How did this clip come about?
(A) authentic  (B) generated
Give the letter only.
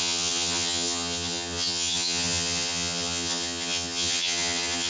B